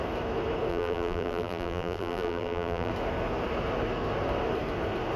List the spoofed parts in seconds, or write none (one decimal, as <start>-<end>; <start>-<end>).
0.7-2.9